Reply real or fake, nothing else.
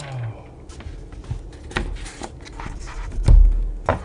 real